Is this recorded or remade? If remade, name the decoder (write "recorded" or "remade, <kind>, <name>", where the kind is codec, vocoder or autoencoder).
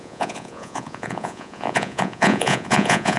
remade, vocoder, Vocos